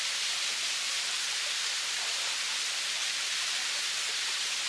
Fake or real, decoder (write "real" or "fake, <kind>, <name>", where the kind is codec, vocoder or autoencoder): real